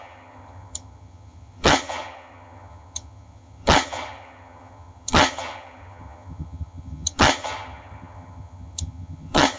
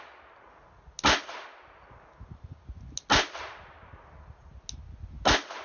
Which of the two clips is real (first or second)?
second